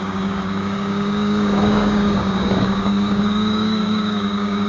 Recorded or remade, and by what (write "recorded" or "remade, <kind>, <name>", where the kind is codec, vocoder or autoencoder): remade, codec, DAC